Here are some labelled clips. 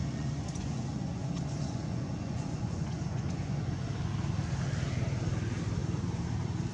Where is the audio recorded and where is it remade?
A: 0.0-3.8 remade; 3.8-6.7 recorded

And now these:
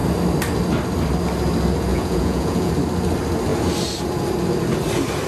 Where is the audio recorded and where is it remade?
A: 0.0-1.9 recorded; 1.9-2.7 remade; 2.7-5.3 recorded

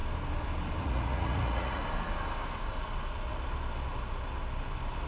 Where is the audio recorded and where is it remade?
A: 0.0-0.8 recorded; 0.8-1.8 remade; 1.8-5.1 recorded

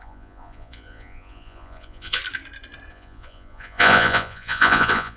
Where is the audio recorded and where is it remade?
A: 0.0-2.2 remade; 2.2-2.9 recorded; 2.9-5.2 remade

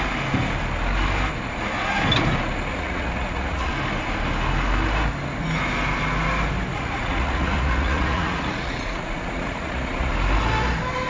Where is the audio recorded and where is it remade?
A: 0.0-2.7 recorded; 2.7-3.7 remade; 3.7-6.7 recorded; 6.7-10.1 remade; 10.1-11.1 recorded

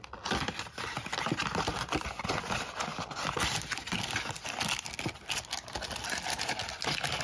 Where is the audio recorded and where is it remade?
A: 0.0-7.2 recorded

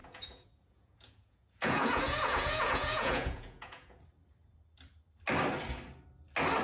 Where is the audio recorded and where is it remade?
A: 0.0-4.0 remade; 4.0-6.6 recorded